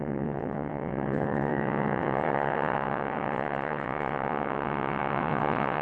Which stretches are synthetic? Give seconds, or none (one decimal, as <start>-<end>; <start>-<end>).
0.0-5.8